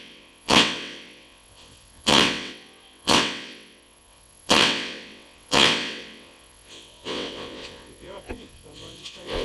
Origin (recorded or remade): remade